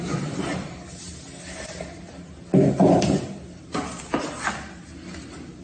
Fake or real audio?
real